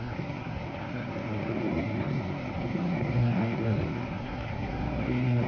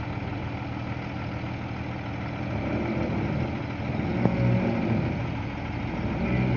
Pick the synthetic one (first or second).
first